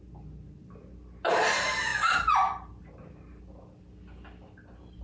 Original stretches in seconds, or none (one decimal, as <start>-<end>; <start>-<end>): 0.0-5.0